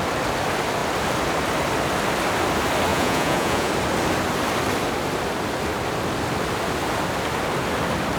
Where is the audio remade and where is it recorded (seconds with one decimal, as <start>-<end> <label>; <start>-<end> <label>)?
0.0-2.9 recorded; 2.9-3.7 remade; 3.7-8.2 recorded